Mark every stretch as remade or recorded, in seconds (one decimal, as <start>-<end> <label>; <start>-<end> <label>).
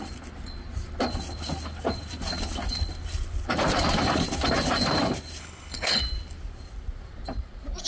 0.0-5.4 recorded; 5.4-6.0 remade; 6.0-7.9 recorded